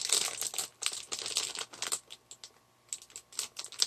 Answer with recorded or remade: recorded